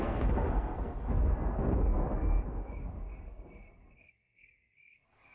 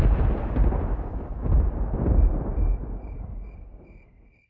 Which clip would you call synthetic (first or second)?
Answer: first